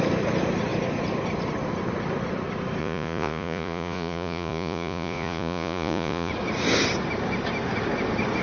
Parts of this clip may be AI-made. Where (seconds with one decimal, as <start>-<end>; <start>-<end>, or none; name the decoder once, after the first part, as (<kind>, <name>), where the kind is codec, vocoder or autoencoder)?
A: 2.8-6.3 (vocoder, Vocos)